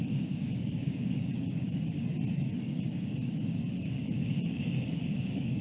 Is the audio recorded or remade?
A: remade